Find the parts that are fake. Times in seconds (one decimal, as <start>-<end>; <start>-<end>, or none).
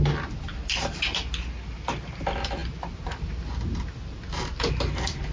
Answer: none